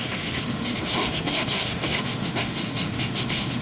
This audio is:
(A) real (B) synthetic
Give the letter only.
B